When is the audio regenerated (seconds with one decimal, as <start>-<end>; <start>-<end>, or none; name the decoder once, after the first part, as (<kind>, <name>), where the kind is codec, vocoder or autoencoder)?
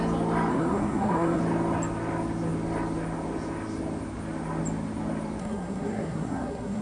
0.5-1.4 (codec, SNAC); 5.4-6.8